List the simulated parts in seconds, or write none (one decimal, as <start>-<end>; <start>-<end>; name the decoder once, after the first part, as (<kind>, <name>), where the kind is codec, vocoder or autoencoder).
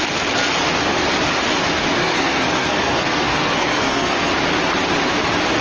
2.0-4.3 (codec, SNAC)